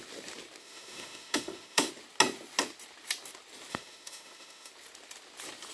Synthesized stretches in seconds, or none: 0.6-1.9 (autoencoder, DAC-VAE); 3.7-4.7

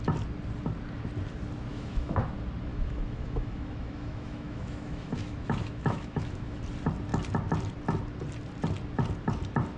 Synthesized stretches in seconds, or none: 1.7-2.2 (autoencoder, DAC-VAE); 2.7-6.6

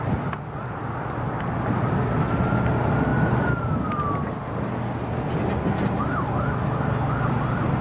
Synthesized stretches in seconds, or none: none

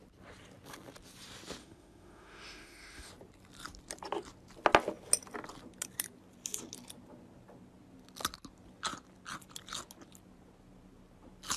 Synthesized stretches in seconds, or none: 1.6-3.1 (autoencoder, DAC-VAE)

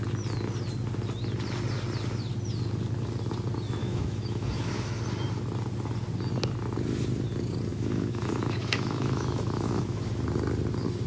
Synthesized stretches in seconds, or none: 3.8-5.0 (autoencoder, DAC-VAE); 7.7-10.1

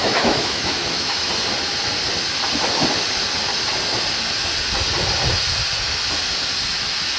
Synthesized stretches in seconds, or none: 0.0-1.3 (autoencoder, DAC-VAE)

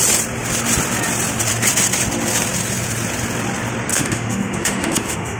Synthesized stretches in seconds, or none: 3.9-5.4 (autoencoder, DAC-VAE)